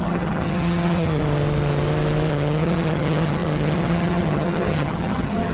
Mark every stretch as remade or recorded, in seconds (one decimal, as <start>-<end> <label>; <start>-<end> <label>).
0.0-1.2 remade; 1.2-2.3 recorded; 2.3-5.5 remade